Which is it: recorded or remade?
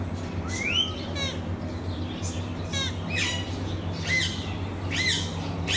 recorded